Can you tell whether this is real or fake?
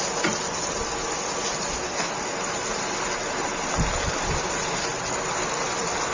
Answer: real